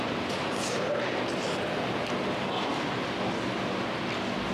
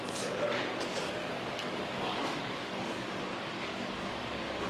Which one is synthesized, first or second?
second